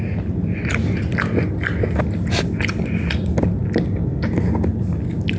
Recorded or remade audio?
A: recorded